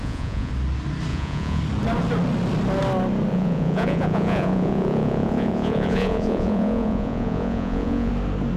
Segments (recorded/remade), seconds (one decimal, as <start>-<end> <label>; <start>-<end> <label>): 0.0-0.5 remade; 0.5-1.1 recorded; 1.1-1.6 remade; 1.6-3.3 recorded; 3.3-8.1 remade; 8.1-8.6 recorded